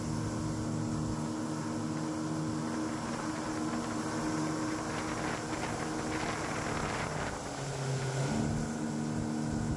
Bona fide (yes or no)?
yes